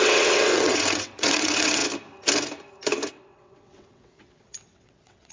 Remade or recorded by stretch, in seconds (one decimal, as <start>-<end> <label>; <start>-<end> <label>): 0.0-1.8 remade; 1.8-3.1 recorded; 3.1-5.3 remade